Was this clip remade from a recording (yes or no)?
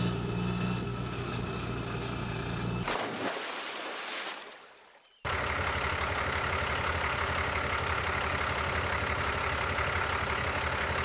no